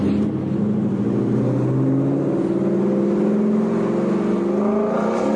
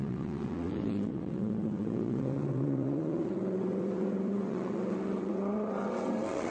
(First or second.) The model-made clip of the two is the second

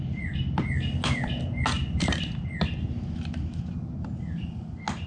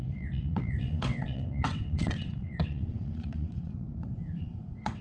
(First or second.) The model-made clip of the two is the second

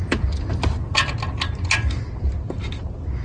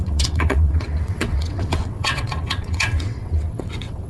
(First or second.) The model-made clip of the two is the second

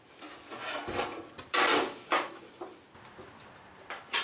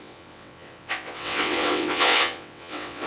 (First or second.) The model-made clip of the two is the second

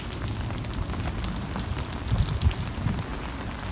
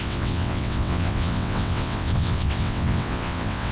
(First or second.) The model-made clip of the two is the second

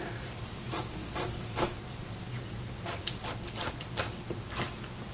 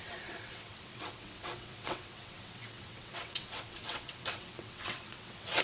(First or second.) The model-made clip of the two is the second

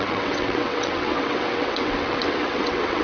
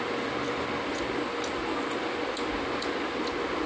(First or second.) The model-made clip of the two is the first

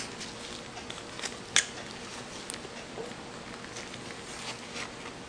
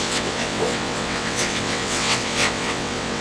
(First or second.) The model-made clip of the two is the second